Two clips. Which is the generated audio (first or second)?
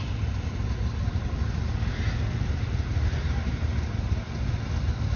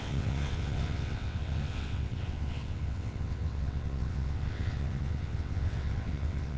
second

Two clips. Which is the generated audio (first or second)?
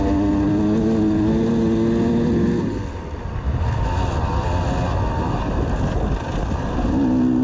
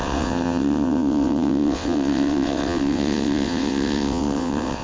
second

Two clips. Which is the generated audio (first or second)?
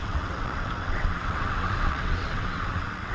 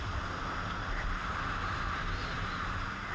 first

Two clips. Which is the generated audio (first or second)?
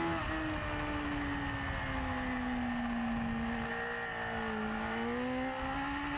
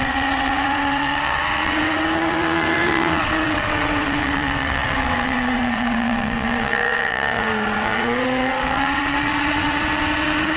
second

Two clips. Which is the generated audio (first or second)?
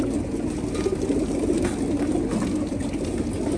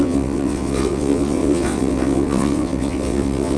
second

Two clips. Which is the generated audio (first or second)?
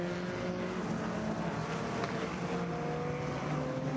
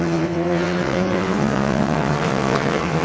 second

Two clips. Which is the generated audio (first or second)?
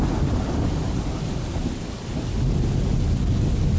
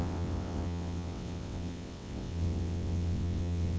second